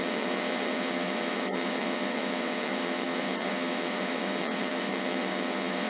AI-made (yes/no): yes